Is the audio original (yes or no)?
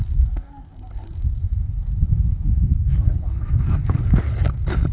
no